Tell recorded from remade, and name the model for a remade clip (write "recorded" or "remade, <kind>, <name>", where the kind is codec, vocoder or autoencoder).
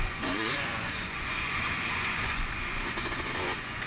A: remade, vocoder, Vocos